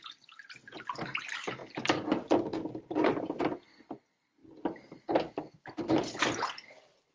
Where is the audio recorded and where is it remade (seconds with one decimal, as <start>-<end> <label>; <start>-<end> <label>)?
0.0-7.1 recorded